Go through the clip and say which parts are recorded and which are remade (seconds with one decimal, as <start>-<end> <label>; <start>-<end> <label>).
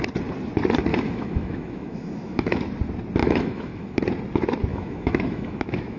0.0-0.9 recorded; 0.9-2.6 remade; 2.6-3.2 recorded; 3.2-4.0 remade; 4.0-4.7 recorded; 4.7-6.0 remade